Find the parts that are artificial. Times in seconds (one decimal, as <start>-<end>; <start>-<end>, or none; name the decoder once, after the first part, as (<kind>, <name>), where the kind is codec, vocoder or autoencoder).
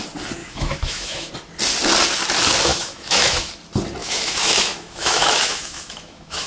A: 0.4-1.3 (autoencoder, DAC-VAE); 2.7-3.5; 4.0-6.5